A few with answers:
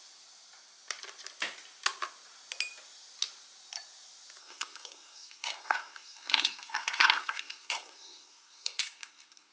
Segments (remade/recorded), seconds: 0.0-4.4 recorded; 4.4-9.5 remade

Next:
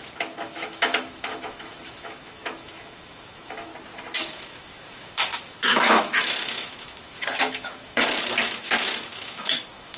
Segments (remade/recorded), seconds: 0.0-3.7 remade; 3.7-4.3 recorded; 4.3-10.0 remade

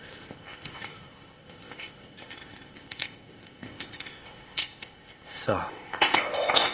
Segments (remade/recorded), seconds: 0.0-6.7 remade

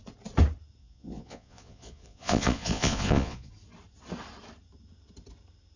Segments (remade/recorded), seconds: 0.0-0.8 recorded; 0.8-3.5 remade; 3.5-5.8 recorded